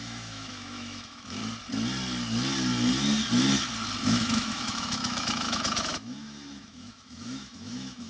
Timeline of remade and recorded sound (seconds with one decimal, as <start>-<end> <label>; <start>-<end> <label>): 0.0-1.4 remade; 1.4-4.0 recorded; 4.0-8.1 remade